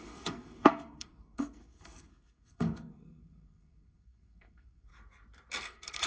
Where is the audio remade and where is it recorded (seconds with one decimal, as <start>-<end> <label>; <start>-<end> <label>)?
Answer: 0.0-4.9 remade; 4.9-5.6 recorded; 5.6-6.1 remade